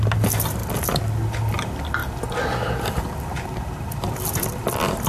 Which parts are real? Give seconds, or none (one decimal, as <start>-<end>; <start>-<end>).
0.0-5.1